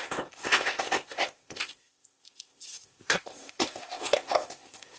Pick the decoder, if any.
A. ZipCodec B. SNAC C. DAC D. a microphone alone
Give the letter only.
A